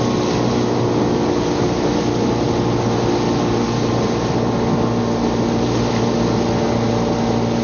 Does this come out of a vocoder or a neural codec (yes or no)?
no